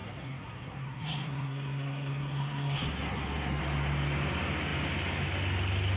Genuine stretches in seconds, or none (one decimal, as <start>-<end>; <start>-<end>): 3.6-6.0